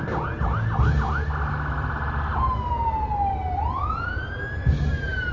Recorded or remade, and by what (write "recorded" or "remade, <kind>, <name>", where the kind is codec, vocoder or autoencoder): recorded